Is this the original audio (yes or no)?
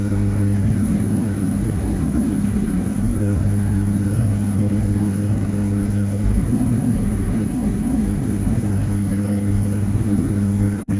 no